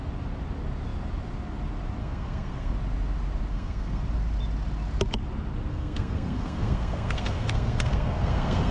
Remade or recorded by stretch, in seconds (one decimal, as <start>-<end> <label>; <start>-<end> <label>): 0.0-2.0 recorded; 2.0-2.7 remade; 2.7-3.5 recorded; 3.5-4.0 remade; 4.0-5.7 recorded; 5.7-8.7 remade